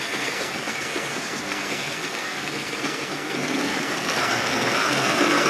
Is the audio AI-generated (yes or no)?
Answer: yes